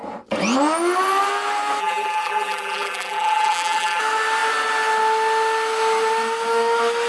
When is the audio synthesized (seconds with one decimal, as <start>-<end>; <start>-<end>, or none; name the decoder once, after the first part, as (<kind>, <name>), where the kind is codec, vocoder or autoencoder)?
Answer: 1.8-4.0 (vocoder, BigVGAN v2)